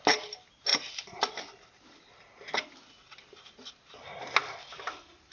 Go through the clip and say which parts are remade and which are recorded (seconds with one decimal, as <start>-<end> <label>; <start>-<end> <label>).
0.0-5.3 recorded